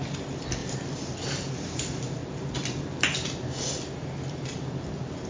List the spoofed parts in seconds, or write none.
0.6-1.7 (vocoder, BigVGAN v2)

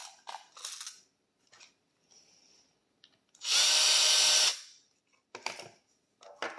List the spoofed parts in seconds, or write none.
none

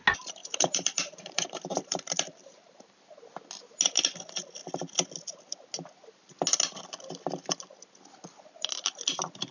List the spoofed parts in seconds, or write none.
0.4-2.9 (vocoder, BigVGAN v2)

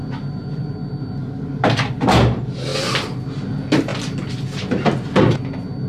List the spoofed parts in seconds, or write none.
0.0-1.9 (vocoder, BigVGAN v2)

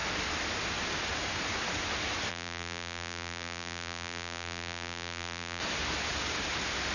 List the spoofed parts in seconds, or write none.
2.3-5.6 (vocoder, BigVGAN v2)